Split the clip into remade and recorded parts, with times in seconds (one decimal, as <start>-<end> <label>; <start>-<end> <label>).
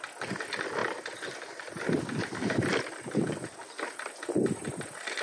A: 0.0-5.2 recorded